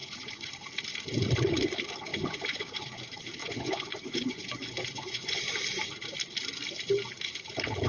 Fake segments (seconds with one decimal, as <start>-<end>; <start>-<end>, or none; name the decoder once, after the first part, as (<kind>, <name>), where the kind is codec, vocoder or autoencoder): 0.0-0.5 (vocoder, Vocos); 2.1-3.0; 3.4-5.4